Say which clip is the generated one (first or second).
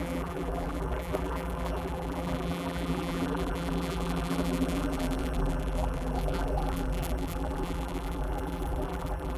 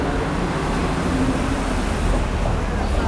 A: first